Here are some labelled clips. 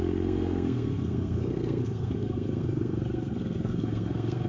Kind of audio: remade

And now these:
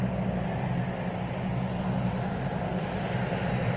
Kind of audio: recorded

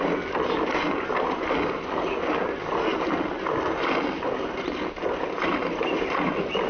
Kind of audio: recorded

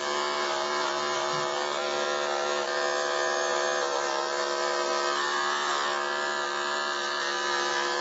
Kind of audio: recorded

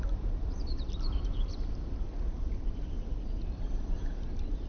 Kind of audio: remade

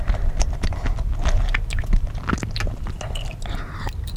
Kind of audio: recorded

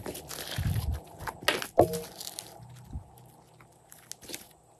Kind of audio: recorded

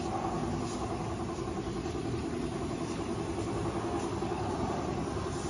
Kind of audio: recorded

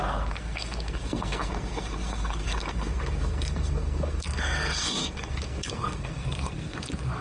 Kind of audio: remade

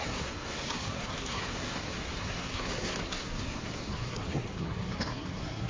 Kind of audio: remade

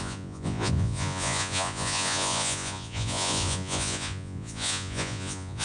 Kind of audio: remade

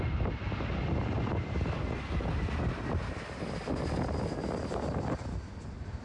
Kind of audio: recorded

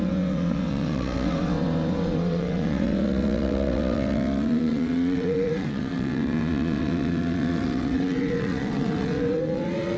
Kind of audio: remade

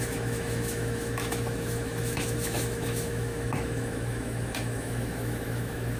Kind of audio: remade